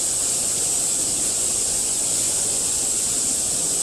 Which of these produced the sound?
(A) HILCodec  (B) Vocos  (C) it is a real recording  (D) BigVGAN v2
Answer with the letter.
B